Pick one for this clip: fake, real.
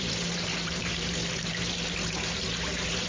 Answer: fake